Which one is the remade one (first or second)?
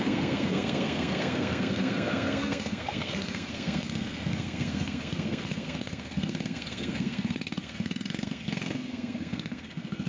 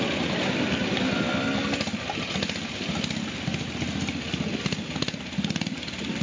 first